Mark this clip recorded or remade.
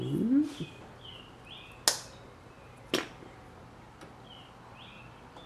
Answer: recorded